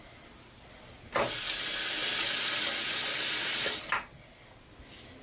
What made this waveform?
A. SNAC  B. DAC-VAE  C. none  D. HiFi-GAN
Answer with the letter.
C